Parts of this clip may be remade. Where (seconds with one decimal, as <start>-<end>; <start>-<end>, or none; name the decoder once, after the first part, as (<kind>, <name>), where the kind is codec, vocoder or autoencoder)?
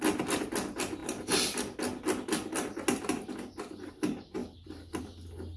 4.4-5.0 (vocoder, BigVGAN v2)